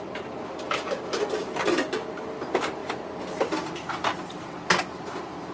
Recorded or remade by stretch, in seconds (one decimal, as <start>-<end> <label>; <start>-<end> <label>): 0.0-5.5 recorded